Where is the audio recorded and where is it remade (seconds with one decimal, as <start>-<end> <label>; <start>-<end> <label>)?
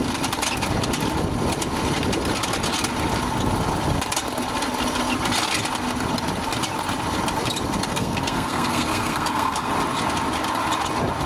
0.0-7.9 recorded; 7.9-9.7 remade; 9.7-11.3 recorded